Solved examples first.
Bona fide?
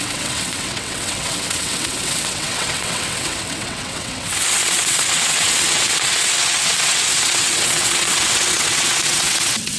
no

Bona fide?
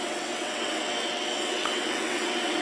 no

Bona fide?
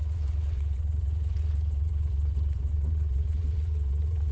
no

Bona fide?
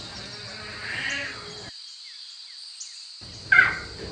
yes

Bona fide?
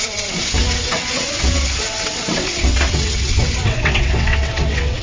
no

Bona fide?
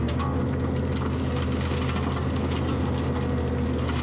yes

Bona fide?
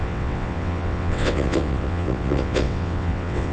no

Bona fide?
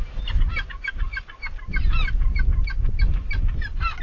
yes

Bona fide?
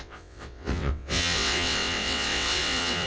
no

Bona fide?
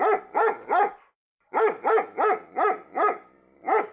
yes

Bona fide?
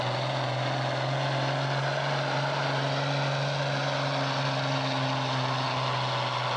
yes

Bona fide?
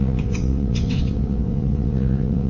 no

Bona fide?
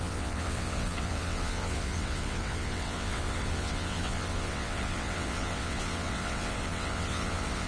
no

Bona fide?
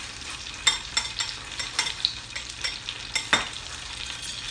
yes